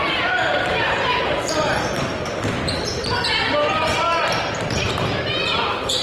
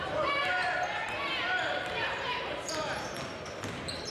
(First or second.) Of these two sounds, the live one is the second